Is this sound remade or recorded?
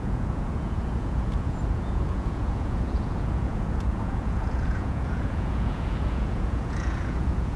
remade